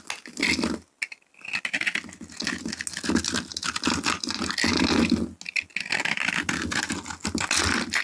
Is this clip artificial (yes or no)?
no